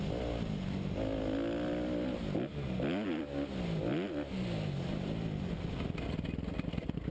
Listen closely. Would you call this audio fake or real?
real